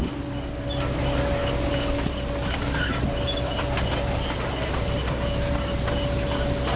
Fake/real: real